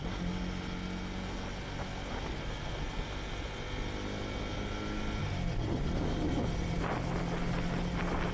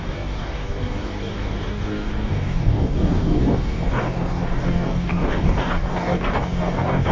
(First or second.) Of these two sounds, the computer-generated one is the second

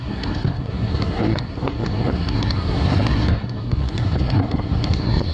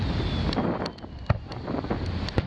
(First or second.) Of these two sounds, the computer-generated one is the first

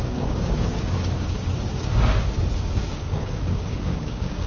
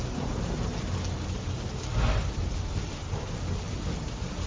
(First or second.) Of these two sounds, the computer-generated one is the first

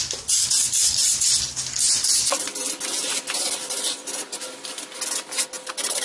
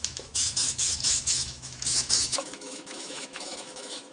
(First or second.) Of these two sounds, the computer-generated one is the second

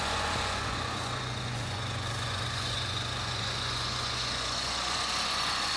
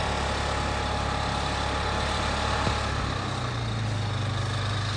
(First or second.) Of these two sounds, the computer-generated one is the first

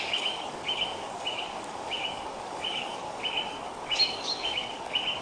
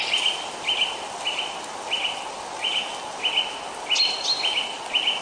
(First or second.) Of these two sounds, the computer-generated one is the first